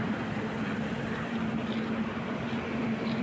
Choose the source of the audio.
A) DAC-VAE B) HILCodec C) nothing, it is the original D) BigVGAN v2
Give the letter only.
D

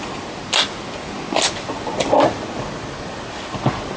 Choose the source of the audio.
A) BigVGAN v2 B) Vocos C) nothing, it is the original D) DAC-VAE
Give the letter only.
C